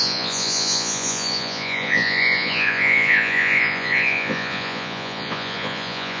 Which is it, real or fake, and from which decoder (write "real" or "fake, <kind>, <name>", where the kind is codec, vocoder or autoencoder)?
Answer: fake, vocoder, Vocos